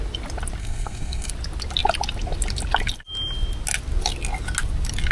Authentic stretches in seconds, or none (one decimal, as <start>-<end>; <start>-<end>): 0.0-0.6; 1.3-5.1